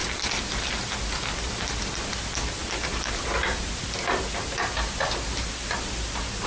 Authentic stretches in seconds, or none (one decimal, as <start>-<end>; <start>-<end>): 0.0-6.5